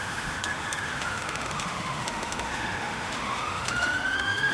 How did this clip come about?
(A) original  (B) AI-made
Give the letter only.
B